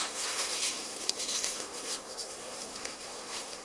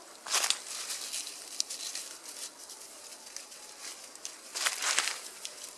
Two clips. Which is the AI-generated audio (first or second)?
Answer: first